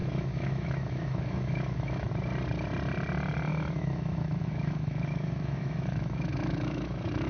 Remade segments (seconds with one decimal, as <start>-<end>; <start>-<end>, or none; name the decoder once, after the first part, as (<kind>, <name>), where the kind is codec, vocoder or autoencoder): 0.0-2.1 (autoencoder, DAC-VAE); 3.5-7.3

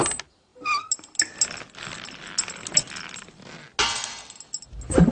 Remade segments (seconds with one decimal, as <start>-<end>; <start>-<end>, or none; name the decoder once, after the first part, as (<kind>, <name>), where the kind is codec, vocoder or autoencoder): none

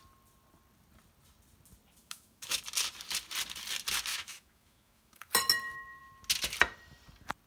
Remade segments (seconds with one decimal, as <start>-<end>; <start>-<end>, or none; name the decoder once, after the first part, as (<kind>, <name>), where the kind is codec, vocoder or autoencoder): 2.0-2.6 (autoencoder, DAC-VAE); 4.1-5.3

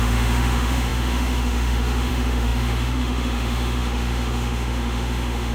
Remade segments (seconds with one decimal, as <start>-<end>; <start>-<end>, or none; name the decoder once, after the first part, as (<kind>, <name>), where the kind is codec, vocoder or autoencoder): 0.0-5.5 (autoencoder, DAC-VAE)